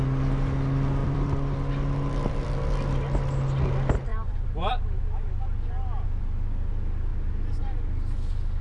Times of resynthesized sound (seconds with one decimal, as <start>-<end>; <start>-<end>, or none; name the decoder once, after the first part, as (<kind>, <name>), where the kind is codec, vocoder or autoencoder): 1.0-1.7 (vocoder, BigVGAN v2); 4.1-5.3